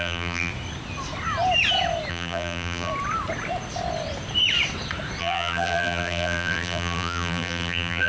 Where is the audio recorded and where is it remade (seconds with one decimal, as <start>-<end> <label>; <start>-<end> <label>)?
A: 0.0-0.5 remade; 0.5-2.1 recorded; 2.1-2.9 remade; 2.9-5.2 recorded; 5.2-8.1 remade